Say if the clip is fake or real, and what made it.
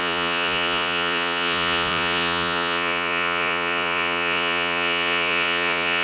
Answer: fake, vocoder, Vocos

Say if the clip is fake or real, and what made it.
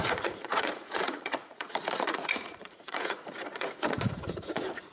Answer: fake, vocoder, Vocos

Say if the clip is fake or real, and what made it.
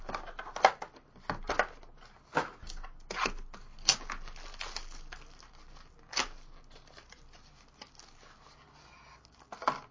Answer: real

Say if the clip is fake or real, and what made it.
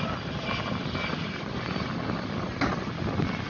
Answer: real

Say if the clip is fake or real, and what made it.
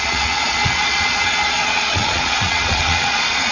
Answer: fake, vocoder, Vocos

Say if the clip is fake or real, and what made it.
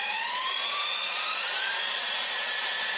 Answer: fake, vocoder, Vocos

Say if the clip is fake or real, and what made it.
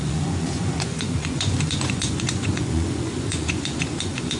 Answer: fake, vocoder, Vocos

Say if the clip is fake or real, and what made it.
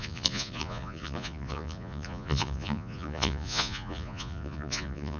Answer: fake, vocoder, Vocos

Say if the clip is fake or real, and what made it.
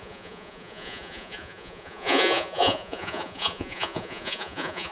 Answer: fake, vocoder, Vocos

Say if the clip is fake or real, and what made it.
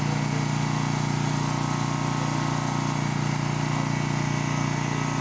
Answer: real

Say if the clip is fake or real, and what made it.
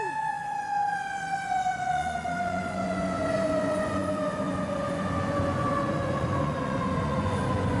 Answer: fake, vocoder, Vocos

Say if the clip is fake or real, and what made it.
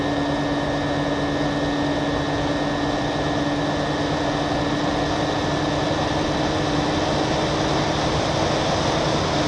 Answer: real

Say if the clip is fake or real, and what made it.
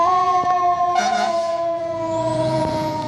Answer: fake, vocoder, Vocos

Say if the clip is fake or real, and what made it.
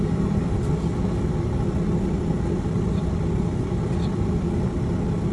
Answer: real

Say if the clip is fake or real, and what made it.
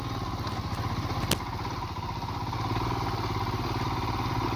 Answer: real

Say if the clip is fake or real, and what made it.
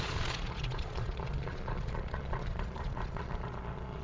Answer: fake, vocoder, Vocos